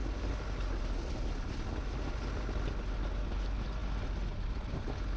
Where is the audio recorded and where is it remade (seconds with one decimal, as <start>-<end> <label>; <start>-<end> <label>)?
0.0-5.2 recorded